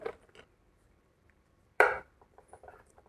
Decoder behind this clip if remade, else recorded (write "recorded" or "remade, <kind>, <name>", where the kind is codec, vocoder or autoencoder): remade, vocoder, BigVGAN v2